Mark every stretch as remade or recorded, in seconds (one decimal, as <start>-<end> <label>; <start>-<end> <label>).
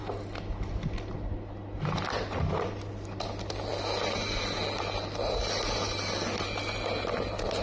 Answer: 0.0-7.6 recorded